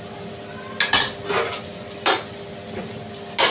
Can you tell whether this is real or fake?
real